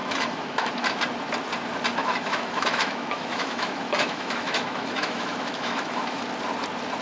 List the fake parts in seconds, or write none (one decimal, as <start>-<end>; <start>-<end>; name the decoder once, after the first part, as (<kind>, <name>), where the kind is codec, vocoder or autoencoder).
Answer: 0.0-0.7 (autoencoder, DAC-VAE); 2.0-6.2